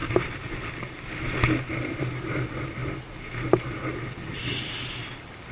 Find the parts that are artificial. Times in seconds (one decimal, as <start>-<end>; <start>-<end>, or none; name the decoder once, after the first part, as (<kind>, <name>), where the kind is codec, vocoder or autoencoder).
none